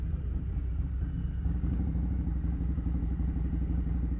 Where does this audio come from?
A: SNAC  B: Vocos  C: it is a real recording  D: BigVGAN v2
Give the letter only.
D